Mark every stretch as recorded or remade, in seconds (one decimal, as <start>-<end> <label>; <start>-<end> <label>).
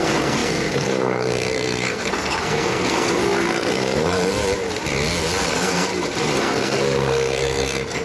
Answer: 0.0-4.4 remade; 4.4-5.5 recorded; 5.5-5.9 remade; 5.9-6.4 recorded; 6.4-8.0 remade